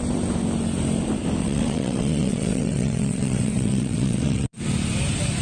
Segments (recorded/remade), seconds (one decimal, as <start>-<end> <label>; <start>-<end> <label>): 0.0-1.4 recorded; 1.4-4.6 remade; 4.6-5.4 recorded